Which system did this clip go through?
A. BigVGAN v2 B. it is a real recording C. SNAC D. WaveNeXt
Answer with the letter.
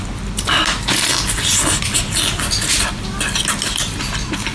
B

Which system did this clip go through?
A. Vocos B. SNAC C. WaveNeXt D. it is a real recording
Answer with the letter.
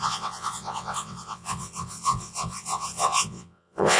C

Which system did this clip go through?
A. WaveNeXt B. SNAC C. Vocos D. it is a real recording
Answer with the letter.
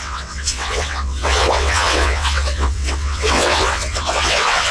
A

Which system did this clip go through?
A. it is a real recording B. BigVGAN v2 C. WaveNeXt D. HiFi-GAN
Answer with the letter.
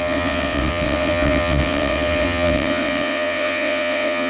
C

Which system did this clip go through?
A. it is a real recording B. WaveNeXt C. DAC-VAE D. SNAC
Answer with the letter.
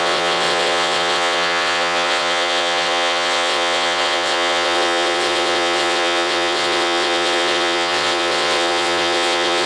B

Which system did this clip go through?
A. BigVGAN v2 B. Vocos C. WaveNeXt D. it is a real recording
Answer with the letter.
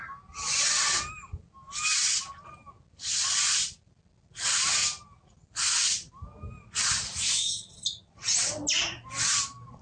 D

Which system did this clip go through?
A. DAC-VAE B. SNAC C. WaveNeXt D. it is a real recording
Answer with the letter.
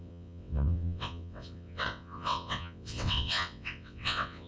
C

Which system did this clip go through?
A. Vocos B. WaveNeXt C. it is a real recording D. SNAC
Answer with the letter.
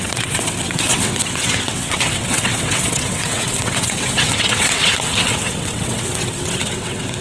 B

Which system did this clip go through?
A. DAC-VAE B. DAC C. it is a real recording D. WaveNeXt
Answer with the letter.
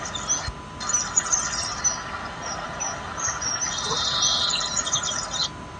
C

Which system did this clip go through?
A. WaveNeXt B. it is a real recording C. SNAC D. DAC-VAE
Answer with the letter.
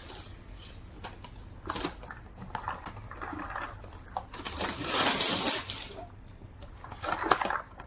B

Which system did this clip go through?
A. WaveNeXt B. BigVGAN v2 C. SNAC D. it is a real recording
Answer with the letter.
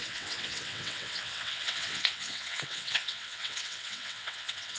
A